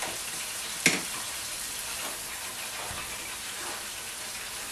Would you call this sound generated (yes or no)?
no